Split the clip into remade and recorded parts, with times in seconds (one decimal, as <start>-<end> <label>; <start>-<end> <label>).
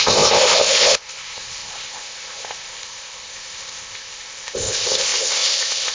0.0-5.9 remade